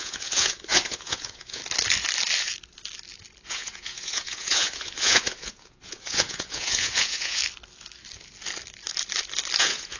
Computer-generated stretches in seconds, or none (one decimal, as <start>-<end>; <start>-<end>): 0.0-1.6; 3.5-7.4; 9.6-10.0